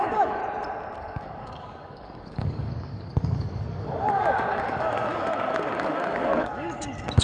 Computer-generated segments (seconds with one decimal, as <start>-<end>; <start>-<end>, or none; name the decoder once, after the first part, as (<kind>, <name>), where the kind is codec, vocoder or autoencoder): 0.0-0.4 (codec, DAC); 1.0-7.2